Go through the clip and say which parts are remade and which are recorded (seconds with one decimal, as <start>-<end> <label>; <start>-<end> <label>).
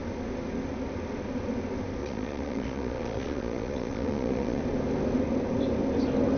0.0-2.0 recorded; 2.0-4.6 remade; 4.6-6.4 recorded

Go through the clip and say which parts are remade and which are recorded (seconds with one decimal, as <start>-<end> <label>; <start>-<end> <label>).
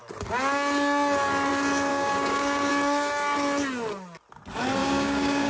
0.0-1.9 recorded; 1.9-2.7 remade; 2.7-4.8 recorded; 4.8-5.5 remade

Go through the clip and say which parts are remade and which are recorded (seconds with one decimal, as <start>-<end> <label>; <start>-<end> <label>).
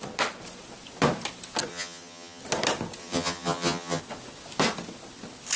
0.0-1.7 recorded; 1.7-2.4 remade; 2.4-3.0 recorded; 3.0-4.0 remade; 4.0-5.6 recorded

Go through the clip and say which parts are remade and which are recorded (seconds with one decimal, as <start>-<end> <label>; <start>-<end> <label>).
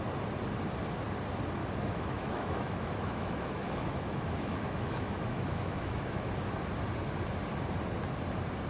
0.0-1.6 recorded; 1.6-6.3 remade; 6.3-8.7 recorded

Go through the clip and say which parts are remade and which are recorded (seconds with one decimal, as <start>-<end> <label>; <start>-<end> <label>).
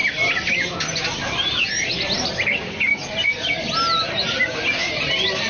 0.0-5.5 recorded